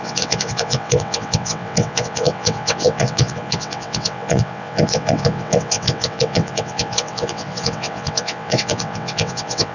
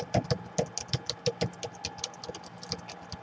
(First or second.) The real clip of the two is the second